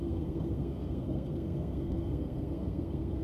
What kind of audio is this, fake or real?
fake